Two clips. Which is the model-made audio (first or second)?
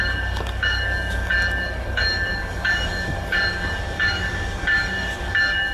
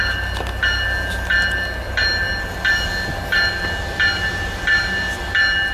first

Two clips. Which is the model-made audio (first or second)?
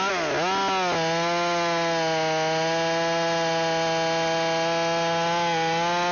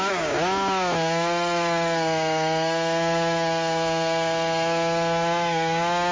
second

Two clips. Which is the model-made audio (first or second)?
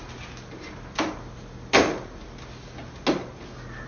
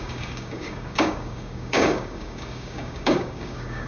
second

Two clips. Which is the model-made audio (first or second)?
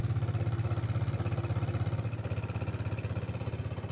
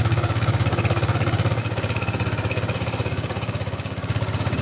second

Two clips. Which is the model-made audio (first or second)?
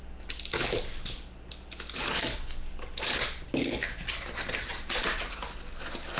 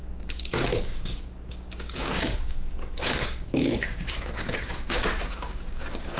second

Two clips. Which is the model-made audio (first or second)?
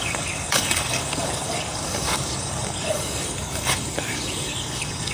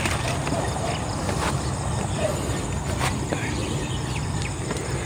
first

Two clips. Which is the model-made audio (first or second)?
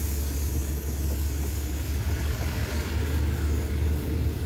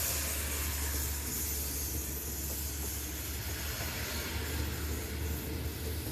first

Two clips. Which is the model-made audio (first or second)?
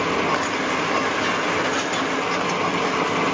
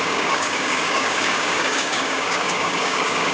second